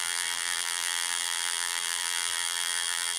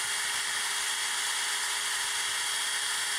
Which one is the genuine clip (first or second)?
second